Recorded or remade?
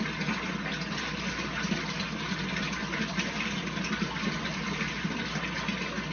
recorded